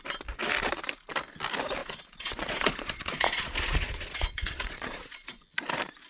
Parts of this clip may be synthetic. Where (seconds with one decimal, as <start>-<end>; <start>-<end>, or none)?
1.8-5.4